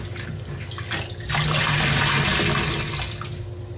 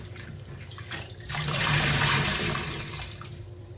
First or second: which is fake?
second